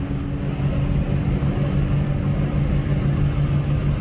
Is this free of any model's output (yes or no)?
yes